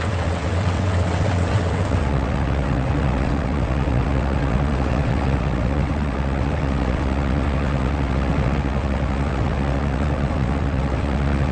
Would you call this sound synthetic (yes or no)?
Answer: yes